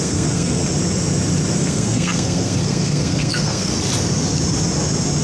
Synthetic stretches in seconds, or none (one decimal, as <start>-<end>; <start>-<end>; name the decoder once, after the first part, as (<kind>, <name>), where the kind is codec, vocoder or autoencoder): 0.0-0.6 (codec, SNAC); 1.6-3.7